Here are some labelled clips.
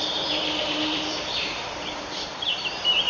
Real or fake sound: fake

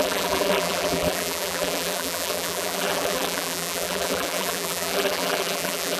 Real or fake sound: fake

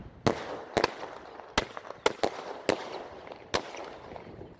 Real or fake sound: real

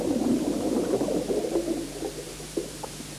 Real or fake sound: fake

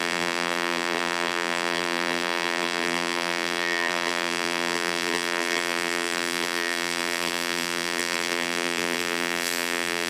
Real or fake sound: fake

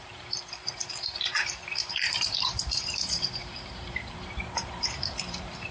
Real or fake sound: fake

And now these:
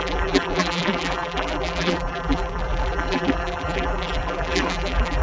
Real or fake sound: fake